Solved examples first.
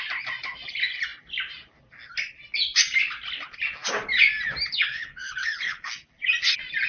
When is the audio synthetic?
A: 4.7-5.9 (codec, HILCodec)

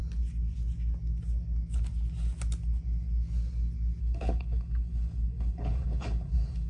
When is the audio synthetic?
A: 4.0-6.7 (codec, HILCodec)

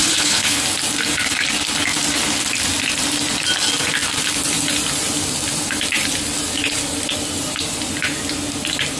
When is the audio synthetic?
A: 0.0-0.6 (codec, HILCodec)

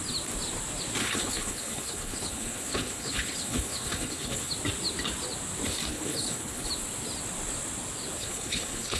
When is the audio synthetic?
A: 1.0-4.5 (codec, HILCodec); 5.9-6.7; 8.2-9.0

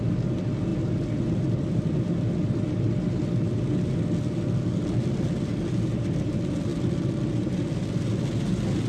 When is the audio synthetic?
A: none

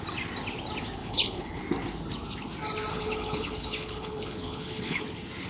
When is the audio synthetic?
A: 1.0-1.6 (codec, HILCodec); 2.9-5.0

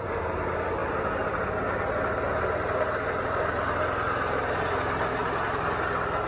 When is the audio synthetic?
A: none

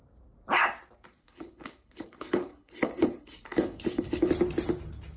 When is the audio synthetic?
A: 1.2-4.3 (codec, HILCodec)